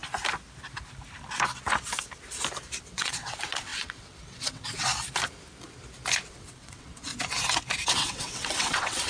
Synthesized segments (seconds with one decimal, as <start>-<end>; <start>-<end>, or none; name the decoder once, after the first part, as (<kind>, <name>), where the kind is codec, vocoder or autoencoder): 2.8-4.9 (vocoder, WaveNeXt); 6.3-7.1; 7.9-9.1